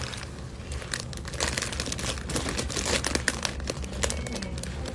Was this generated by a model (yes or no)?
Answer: no